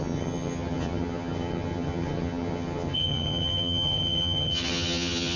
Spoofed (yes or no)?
yes